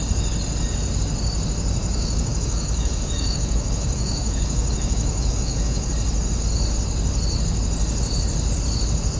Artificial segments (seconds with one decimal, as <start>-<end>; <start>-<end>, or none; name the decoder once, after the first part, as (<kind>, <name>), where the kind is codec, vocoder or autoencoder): 1.8-5.9 (autoencoder, DAC-VAE)